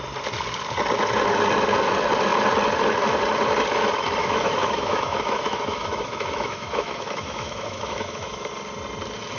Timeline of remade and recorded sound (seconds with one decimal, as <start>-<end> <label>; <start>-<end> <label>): 0.0-4.2 recorded; 4.2-8.5 remade; 8.5-9.4 recorded